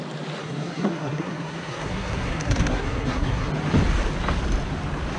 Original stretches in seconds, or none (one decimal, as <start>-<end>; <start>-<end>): 0.0-0.4; 3.5-5.2